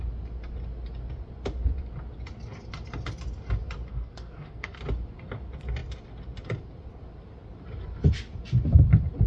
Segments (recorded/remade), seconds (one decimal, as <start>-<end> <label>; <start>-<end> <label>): 0.0-3.9 recorded; 3.9-4.8 remade; 4.8-9.3 recorded